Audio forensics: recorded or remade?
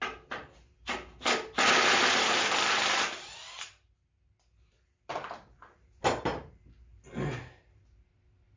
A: recorded